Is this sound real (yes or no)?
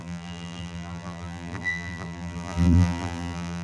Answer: no